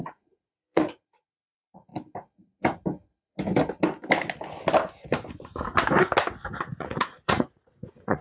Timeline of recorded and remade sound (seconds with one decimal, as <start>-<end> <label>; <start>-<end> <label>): 0.0-1.9 remade; 1.9-6.8 recorded; 6.8-8.2 remade